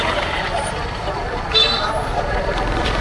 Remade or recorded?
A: remade